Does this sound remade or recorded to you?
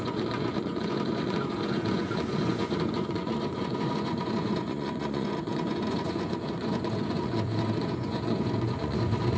remade